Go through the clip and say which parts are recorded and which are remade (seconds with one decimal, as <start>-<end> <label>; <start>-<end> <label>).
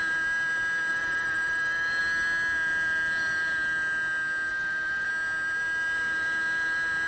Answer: 0.0-0.9 recorded; 0.9-2.0 remade; 2.0-4.5 recorded; 4.5-5.1 remade; 5.1-7.1 recorded